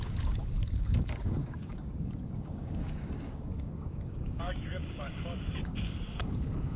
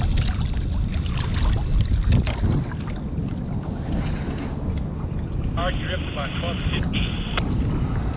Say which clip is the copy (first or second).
first